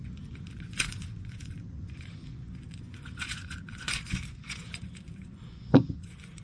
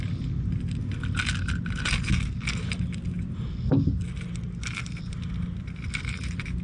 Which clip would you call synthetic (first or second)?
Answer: first